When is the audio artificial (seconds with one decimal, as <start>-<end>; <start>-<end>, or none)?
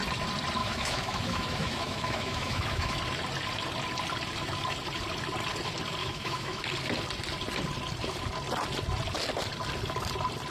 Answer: 0.6-3.0; 6.0-6.6